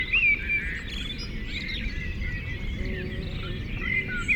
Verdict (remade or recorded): recorded